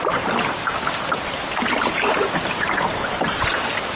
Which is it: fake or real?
real